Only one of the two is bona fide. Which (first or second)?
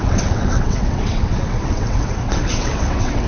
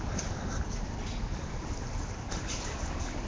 second